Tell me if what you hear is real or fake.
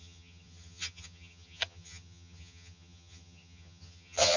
fake